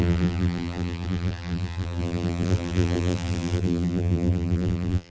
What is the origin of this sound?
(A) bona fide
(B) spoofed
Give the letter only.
B